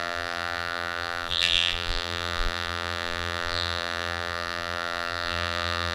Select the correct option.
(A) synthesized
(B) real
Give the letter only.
A